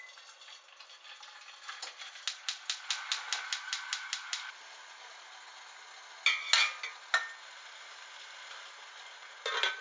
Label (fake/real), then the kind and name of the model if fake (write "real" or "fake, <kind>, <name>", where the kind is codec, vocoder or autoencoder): real